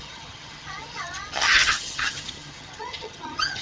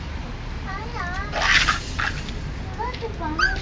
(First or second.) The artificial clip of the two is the first